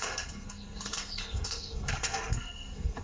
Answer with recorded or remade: remade